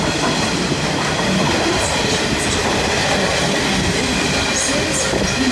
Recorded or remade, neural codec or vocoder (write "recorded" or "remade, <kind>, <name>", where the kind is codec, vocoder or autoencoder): recorded